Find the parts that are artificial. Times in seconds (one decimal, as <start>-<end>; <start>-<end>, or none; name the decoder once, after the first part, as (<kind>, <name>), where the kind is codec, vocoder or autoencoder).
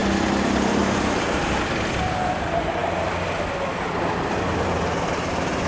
0.0-5.7 (vocoder, BigVGAN v2)